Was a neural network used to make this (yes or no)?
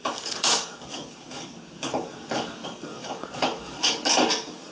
yes